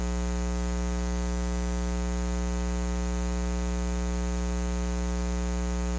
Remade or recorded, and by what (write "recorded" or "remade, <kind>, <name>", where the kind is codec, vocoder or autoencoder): recorded